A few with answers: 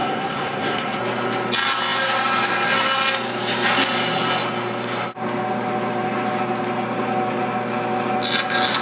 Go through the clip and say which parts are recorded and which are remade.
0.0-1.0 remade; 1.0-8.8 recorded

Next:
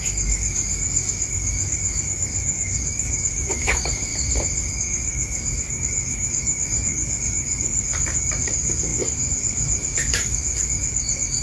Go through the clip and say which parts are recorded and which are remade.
0.0-4.1 remade; 4.1-4.7 recorded; 4.7-11.4 remade

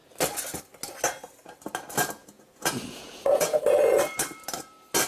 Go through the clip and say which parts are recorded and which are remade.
0.0-2.2 recorded; 2.2-3.6 remade; 3.6-5.1 recorded

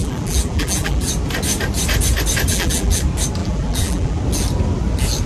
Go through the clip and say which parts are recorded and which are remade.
0.0-1.1 remade; 1.1-2.5 recorded; 2.5-3.0 remade; 3.0-3.4 recorded; 3.4-4.2 remade; 4.2-5.3 recorded

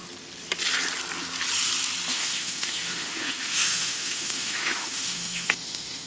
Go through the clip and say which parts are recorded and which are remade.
0.0-2.1 recorded; 2.1-6.1 remade

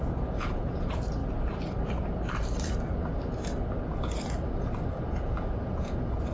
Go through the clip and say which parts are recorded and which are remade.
0.0-1.2 remade; 1.2-5.0 recorded; 5.0-6.3 remade

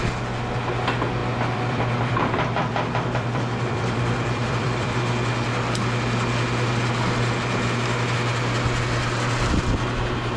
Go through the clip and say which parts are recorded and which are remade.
0.0-1.2 recorded; 1.2-5.0 remade; 5.0-10.4 recorded